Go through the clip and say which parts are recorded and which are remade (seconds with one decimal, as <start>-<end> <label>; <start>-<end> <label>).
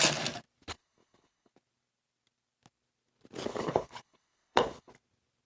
0.0-0.7 recorded; 0.7-1.5 remade; 1.5-3.5 recorded; 3.5-4.9 remade; 4.9-5.5 recorded